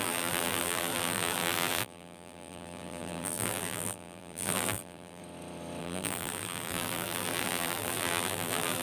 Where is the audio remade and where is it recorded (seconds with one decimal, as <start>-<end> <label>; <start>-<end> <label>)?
0.0-5.2 remade; 5.2-5.8 recorded; 5.8-8.8 remade